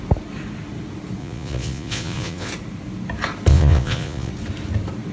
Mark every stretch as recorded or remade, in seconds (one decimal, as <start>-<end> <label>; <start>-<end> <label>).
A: 0.0-1.2 recorded; 1.2-2.5 remade; 2.5-3.5 recorded; 3.5-4.3 remade; 4.3-5.1 recorded